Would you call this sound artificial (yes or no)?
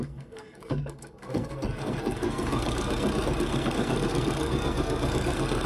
yes